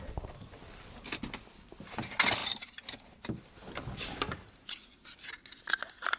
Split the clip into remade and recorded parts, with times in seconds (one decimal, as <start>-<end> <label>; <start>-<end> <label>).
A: 0.0-2.4 recorded; 2.4-5.3 remade; 5.3-6.2 recorded